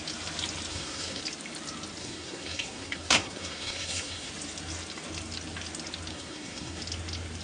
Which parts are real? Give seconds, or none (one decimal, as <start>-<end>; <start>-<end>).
0.0-0.7; 1.2-2.0; 4.3-6.1; 6.8-7.4